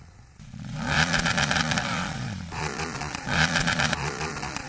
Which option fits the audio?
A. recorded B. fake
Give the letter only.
B